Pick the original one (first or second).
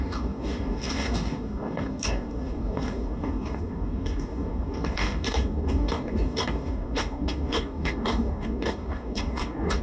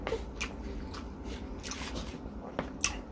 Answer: second